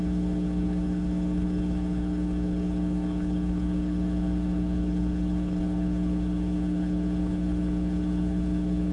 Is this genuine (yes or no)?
no